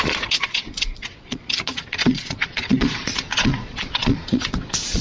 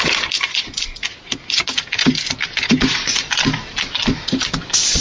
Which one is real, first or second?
second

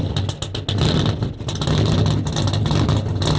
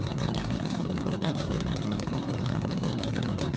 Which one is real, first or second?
first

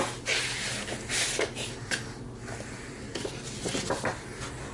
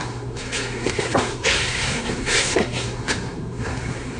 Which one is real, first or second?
first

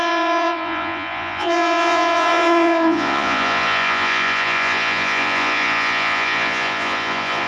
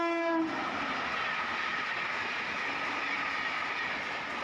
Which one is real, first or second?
second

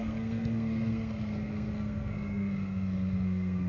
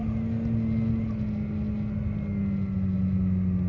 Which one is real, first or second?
second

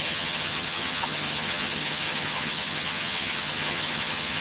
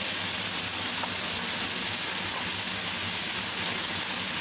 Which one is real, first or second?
second